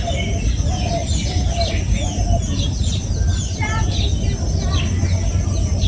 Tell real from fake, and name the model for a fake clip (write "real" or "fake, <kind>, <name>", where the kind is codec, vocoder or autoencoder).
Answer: real